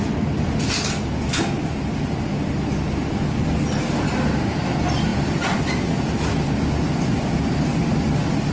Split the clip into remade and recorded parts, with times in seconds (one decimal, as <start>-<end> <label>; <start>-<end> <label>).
0.0-8.5 recorded